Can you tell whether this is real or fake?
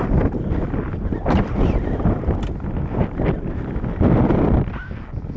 real